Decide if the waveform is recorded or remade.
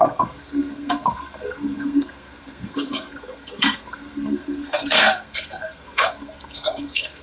remade